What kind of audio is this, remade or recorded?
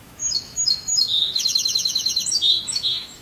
remade